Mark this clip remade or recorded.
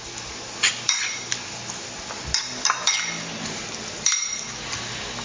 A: recorded